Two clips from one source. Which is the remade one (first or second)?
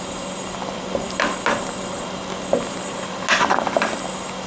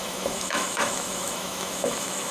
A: second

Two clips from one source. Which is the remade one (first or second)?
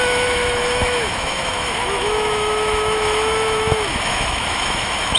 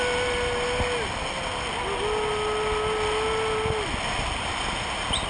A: first